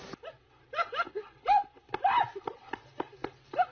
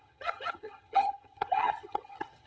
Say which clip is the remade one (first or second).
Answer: second